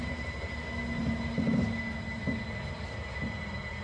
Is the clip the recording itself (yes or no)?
yes